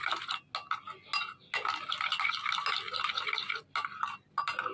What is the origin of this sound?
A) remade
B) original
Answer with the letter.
B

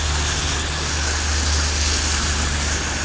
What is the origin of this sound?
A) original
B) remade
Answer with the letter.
A